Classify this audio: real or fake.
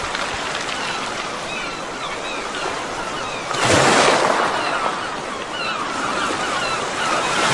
real